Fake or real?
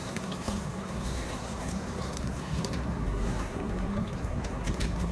fake